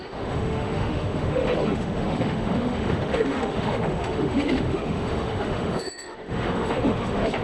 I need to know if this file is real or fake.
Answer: fake